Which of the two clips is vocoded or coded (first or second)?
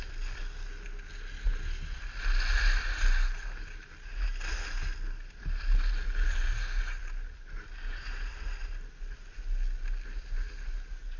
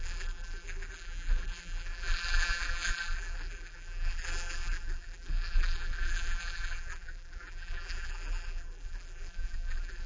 second